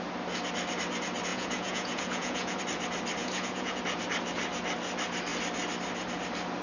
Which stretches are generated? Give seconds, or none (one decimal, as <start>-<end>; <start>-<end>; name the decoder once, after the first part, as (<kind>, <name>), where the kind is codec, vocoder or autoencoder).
1.3-2.6 (vocoder, Vocos); 3.2-3.8